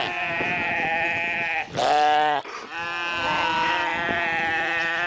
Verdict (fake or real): real